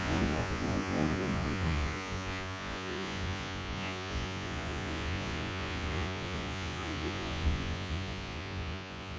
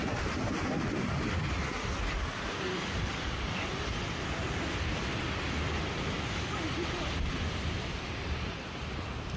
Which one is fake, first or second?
first